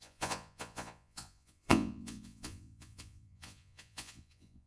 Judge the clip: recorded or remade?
remade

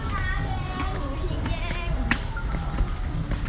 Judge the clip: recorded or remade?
recorded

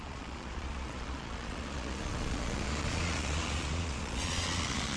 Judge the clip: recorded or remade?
remade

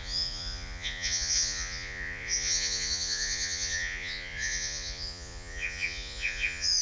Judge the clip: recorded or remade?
remade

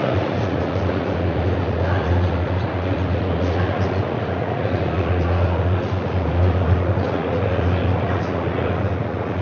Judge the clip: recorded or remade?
remade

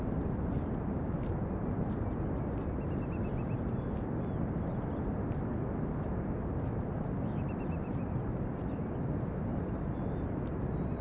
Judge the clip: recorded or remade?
recorded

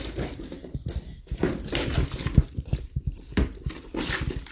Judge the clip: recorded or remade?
recorded